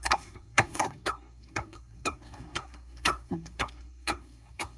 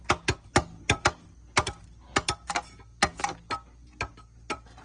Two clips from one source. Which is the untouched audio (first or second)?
second